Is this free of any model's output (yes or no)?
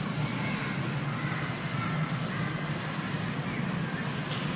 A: yes